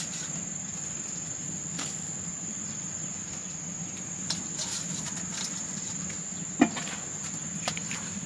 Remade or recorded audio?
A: recorded